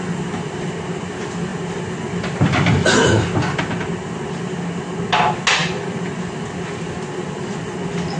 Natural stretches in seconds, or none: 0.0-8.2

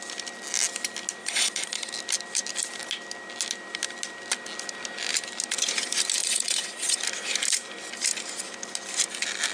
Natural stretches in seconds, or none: 0.0-1.2; 1.9-6.2; 7.0-9.5